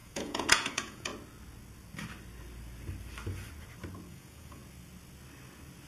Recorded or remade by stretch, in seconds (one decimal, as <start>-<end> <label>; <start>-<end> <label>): 0.0-1.1 remade; 1.1-4.1 recorded; 4.1-4.6 remade; 4.6-5.9 recorded